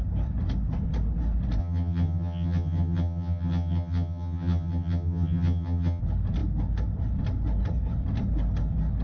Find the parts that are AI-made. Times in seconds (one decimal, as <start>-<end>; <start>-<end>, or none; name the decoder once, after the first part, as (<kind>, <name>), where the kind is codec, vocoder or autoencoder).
1.6-6.0 (vocoder, HiFi-GAN)